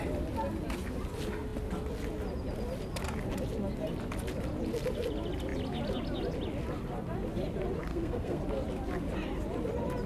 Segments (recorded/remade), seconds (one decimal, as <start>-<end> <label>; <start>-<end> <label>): 0.0-7.9 recorded; 7.9-8.4 remade; 8.4-10.1 recorded